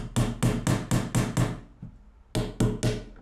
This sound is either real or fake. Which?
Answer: real